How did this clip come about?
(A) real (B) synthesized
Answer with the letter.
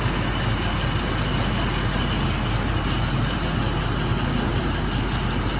A